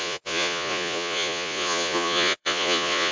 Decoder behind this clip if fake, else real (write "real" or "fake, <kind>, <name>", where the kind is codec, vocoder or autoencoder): fake, vocoder, Vocos